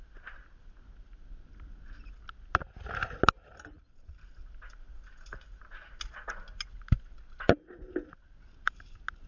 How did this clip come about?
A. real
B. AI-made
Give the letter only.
A